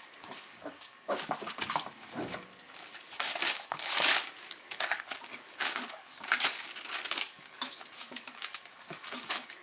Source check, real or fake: fake